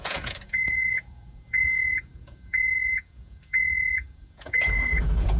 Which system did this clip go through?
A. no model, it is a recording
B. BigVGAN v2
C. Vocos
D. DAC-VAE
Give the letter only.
C